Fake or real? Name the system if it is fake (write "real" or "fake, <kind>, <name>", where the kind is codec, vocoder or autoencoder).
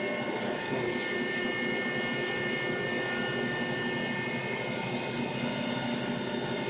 real